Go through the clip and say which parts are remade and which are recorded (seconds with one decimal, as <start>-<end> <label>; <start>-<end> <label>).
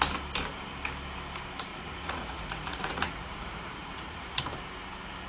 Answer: 0.0-1.7 recorded; 1.7-4.4 remade; 4.4-5.3 recorded